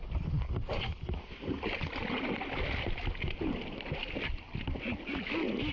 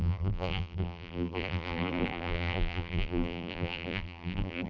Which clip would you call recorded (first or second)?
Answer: first